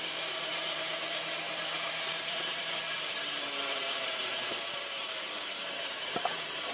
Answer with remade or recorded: remade